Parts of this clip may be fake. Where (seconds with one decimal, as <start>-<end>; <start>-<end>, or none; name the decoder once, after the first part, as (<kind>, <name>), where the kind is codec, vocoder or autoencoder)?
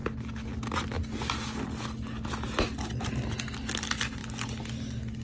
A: none